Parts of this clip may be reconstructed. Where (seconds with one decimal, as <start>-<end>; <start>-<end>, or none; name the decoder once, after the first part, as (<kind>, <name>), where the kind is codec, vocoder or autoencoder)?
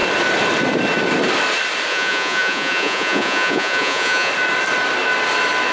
1.9-4.3 (vocoder, Vocos)